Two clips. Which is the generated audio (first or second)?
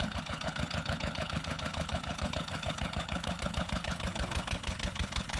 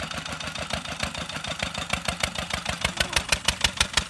first